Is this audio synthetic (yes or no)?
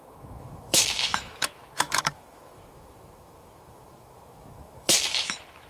yes